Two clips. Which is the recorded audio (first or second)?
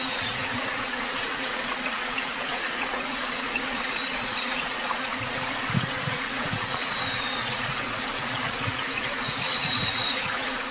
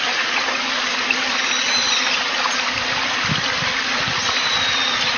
second